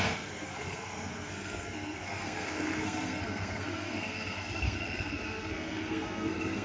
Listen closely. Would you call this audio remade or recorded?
remade